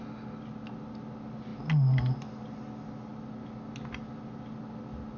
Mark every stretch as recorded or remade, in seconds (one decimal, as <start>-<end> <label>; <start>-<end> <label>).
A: 0.0-5.2 recorded